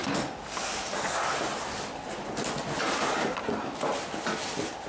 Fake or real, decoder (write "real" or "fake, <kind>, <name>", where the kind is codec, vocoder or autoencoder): real